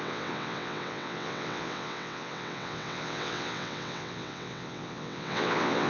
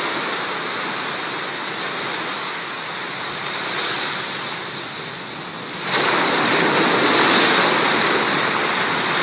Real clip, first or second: second